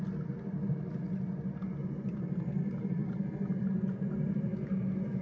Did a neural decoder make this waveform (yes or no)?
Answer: no